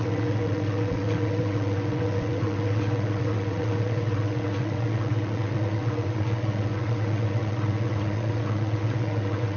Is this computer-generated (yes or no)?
yes